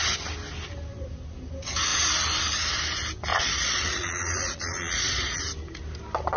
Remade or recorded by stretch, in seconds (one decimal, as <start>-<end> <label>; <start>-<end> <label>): 0.0-3.3 recorded; 3.3-5.4 remade; 5.4-6.4 recorded